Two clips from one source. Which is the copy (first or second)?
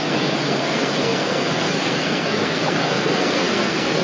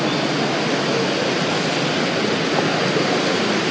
first